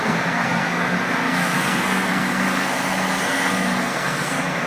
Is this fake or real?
fake